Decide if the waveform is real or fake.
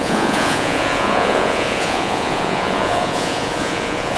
fake